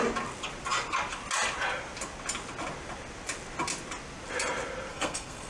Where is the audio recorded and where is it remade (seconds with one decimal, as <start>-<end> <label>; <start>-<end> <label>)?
0.0-4.9 recorded; 4.9-5.5 remade